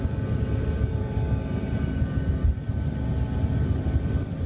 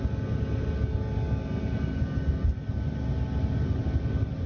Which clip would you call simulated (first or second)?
first